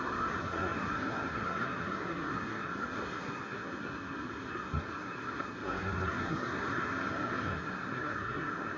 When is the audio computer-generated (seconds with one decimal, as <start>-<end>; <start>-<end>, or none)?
0.0-8.8

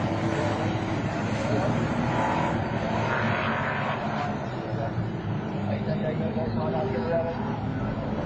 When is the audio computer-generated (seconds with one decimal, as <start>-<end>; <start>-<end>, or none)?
4.4-6.8

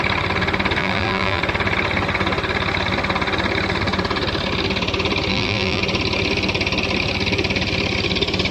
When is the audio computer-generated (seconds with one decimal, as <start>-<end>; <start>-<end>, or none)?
0.8-1.4; 5.3-5.8

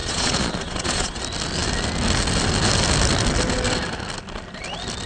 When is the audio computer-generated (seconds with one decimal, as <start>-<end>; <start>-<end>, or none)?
0.0-1.2

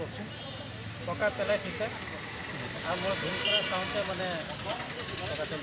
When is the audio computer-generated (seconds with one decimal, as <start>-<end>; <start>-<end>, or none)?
none